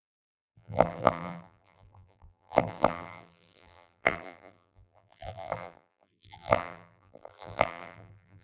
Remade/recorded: remade